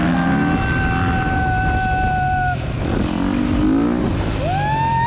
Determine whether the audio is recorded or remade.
recorded